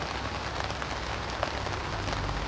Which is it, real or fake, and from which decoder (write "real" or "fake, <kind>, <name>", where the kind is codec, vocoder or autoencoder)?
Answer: real